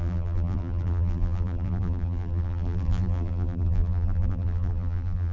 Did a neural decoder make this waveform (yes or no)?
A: yes